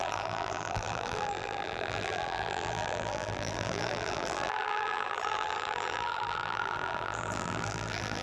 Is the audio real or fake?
fake